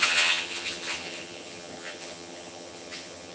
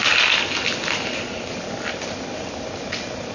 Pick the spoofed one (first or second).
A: first